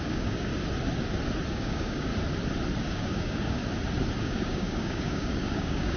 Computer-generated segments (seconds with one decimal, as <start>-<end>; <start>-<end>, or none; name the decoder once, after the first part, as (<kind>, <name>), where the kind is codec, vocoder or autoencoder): 0.0-0.5 (codec, DAC); 1.5-2.1; 2.8-3.6; 4.2-6.0